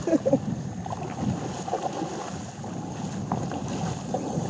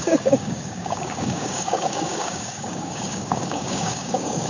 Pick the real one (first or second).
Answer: first